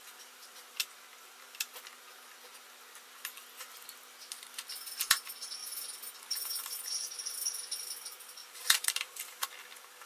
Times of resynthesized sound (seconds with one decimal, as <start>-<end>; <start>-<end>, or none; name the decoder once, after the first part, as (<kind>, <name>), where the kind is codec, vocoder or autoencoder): 8.4-9.5 (vocoder, BigVGAN v2)